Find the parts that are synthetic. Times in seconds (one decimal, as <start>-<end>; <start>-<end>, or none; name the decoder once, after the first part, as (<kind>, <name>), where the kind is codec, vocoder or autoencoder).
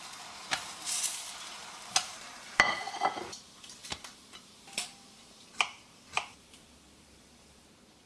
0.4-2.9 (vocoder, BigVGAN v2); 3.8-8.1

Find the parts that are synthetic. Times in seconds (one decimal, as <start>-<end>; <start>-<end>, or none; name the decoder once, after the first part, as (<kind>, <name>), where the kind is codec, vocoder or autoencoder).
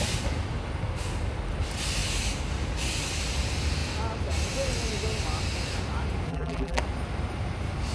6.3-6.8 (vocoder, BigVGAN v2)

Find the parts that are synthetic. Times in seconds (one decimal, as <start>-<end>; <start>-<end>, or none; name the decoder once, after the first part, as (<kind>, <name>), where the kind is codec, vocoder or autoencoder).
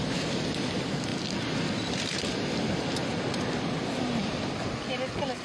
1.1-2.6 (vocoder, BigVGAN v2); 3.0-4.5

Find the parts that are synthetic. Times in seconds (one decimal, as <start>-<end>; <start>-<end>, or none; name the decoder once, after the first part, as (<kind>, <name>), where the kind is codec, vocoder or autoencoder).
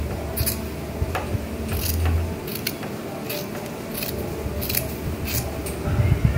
none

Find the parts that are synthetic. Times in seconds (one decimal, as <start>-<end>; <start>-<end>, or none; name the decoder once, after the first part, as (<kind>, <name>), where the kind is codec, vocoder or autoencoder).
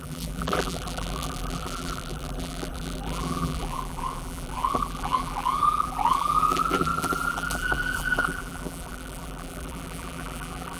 0.0-10.8 (vocoder, BigVGAN v2)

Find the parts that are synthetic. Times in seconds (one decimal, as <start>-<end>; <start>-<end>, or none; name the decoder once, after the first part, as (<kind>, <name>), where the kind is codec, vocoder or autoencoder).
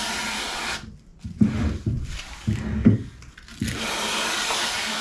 1.1-2.3 (vocoder, BigVGAN v2)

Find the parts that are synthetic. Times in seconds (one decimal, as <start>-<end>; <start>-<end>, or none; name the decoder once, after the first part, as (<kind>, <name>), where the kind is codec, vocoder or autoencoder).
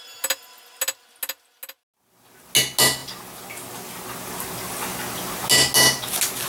none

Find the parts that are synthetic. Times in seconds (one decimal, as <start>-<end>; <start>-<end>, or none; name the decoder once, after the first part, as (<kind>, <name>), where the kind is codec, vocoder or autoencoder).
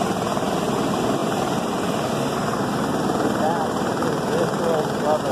1.2-2.1 (vocoder, BigVGAN v2)